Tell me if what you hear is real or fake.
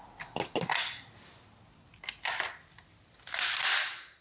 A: real